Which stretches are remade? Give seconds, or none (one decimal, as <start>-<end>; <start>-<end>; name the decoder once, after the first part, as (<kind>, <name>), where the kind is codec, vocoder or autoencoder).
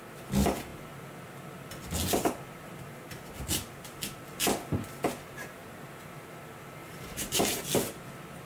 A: 6.8-7.6 (vocoder, BigVGAN v2)